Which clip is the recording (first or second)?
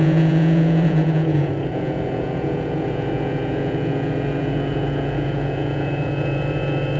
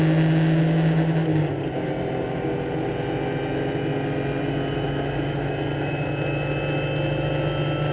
second